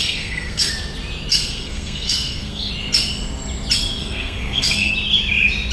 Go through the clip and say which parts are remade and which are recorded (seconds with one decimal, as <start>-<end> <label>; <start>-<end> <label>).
0.0-0.7 remade; 0.7-1.3 recorded; 1.3-2.7 remade; 2.7-4.0 recorded; 4.0-4.9 remade; 4.9-5.7 recorded